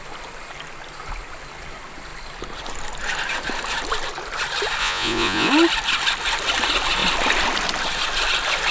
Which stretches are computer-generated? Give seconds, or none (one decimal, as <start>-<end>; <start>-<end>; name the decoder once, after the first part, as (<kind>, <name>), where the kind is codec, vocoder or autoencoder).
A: 4.8-5.5 (vocoder, Vocos)

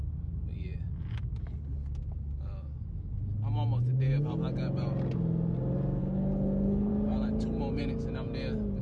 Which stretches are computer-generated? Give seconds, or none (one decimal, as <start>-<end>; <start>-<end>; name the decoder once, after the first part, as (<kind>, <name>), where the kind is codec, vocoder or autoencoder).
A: 6.0-6.9 (codec, HILCodec)

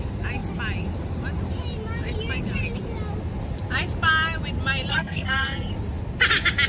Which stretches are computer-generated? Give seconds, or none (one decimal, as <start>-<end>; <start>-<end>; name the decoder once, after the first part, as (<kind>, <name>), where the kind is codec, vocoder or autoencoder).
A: 4.9-5.7 (codec, SNAC)